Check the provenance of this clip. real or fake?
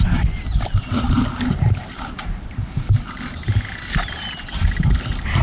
real